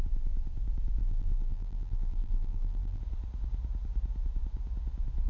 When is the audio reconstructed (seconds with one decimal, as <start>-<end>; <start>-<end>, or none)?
1.0-3.0